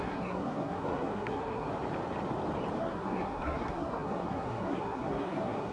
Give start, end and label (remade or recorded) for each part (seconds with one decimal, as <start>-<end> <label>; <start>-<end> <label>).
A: 0.0-1.7 remade; 1.7-2.8 recorded; 2.8-5.7 remade